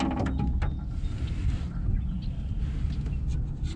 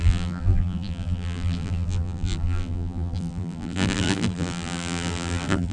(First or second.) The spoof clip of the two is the second